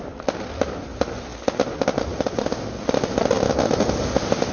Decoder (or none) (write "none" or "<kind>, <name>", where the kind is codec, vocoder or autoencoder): none